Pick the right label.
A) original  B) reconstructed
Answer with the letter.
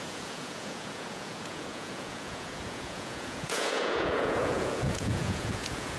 B